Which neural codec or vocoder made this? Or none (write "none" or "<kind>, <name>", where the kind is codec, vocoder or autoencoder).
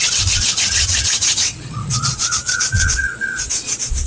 vocoder, Vocos